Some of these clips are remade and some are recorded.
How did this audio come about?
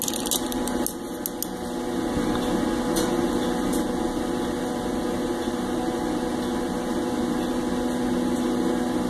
recorded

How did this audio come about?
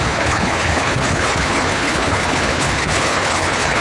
remade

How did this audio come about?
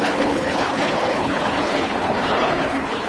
remade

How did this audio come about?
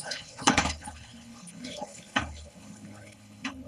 remade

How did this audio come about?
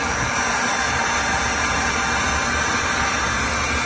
recorded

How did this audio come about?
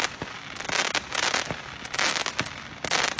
recorded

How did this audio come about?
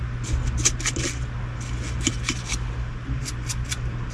recorded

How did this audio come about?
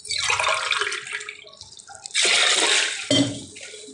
recorded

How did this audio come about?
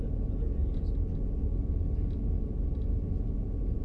recorded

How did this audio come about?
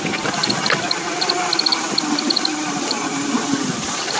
recorded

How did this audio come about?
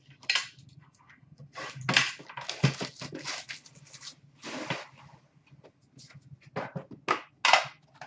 recorded